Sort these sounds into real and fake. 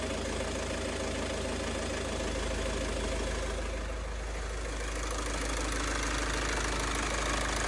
real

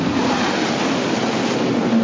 real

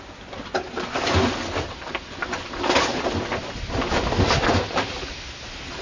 real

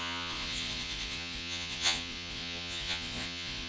fake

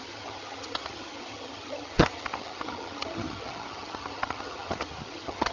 fake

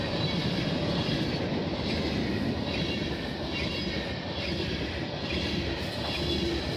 real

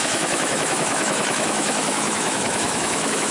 fake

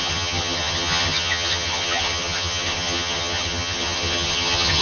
fake